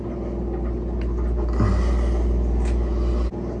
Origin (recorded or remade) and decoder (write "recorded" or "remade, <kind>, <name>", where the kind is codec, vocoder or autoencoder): recorded